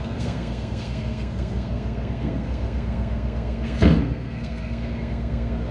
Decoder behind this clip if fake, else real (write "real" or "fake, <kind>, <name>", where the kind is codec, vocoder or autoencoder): fake, codec, SNAC